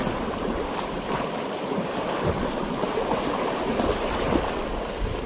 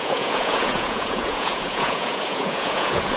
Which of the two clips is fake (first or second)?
second